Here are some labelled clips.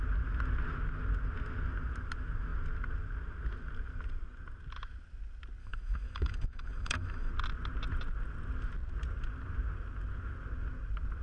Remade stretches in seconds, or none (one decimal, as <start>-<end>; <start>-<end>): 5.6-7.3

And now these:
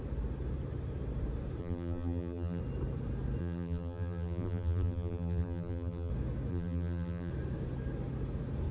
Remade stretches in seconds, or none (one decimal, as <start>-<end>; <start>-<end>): 1.6-2.6; 3.4-6.1; 6.5-7.3

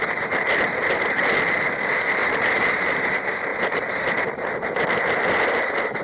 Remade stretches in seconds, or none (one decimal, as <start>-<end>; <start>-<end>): 2.2-2.8

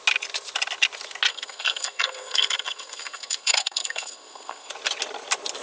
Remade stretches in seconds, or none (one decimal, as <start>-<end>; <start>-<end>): 1.3-4.7

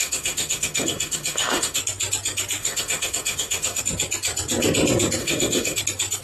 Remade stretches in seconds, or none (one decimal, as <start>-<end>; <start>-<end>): 0.0-1.8; 2.6-3.8; 5.2-5.8

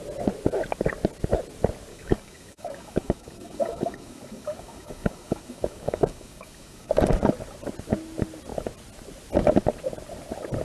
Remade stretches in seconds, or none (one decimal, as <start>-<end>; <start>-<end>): 1.9-6.9